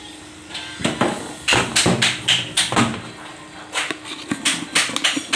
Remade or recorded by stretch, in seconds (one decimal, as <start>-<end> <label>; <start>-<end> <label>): 0.0-5.4 recorded